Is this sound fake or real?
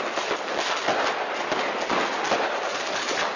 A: real